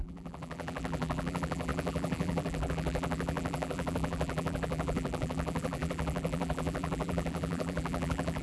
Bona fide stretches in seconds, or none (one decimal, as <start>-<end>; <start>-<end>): none